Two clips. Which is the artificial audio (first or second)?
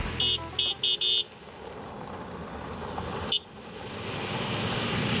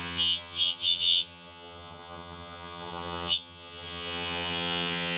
second